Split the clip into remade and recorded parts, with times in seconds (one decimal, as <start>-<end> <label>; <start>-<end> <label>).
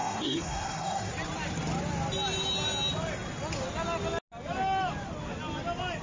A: 0.0-1.1 remade; 1.1-6.0 recorded